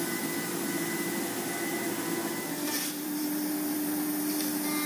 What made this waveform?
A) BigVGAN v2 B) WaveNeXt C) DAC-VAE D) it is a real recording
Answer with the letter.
A